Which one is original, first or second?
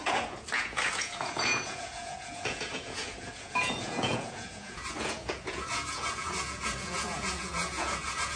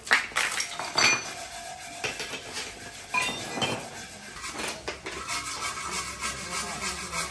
second